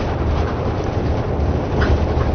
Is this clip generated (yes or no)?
yes